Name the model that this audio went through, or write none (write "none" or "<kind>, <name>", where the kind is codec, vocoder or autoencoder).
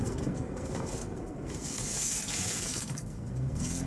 codec, SNAC